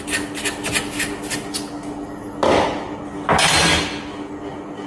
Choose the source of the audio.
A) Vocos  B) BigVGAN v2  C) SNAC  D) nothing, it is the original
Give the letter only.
D